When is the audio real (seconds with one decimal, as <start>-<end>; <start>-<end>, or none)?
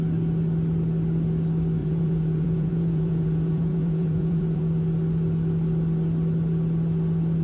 0.0-1.8; 4.6-7.4